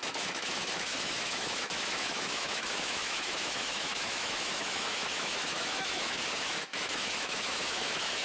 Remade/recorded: remade